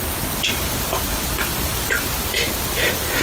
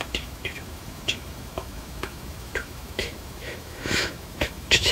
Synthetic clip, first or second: second